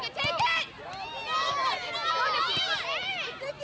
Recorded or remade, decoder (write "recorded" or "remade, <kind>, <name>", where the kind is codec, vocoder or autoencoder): recorded